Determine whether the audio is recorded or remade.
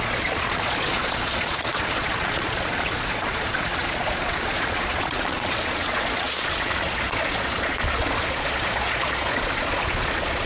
remade